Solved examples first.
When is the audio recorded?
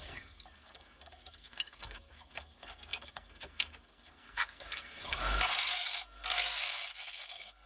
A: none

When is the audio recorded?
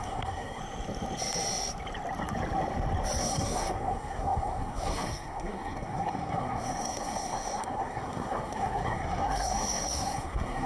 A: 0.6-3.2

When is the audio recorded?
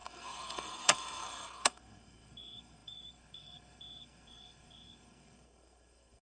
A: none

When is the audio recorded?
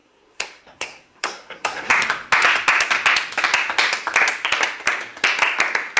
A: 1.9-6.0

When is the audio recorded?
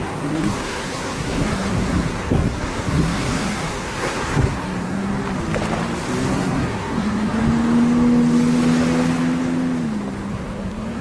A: 5.1-6.3; 7.4-10.3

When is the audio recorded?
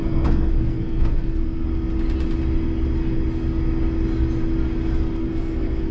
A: 1.7-5.2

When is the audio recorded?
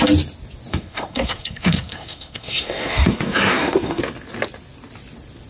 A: 0.0-0.7; 4.0-5.5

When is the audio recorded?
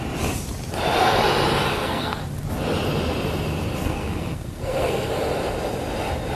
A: 0.0-1.7; 2.2-3.8; 5.1-6.3